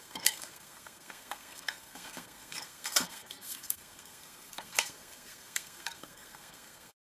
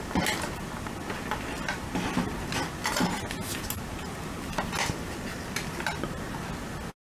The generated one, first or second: first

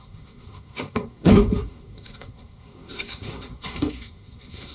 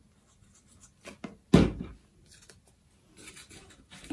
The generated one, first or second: first